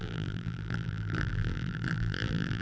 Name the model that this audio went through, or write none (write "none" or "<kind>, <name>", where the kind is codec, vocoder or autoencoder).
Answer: vocoder, BigVGAN v2